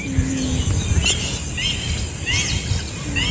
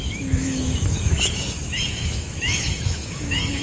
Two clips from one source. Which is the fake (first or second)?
second